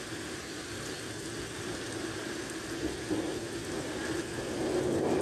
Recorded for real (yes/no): yes